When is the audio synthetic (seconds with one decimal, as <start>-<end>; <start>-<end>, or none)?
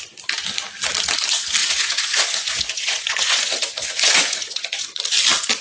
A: 1.6-5.0